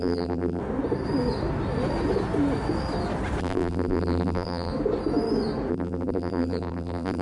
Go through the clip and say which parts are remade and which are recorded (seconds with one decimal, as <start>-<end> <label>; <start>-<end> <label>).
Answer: 0.0-0.6 remade; 0.6-3.4 recorded; 3.4-4.7 remade; 4.7-5.7 recorded; 5.7-7.2 remade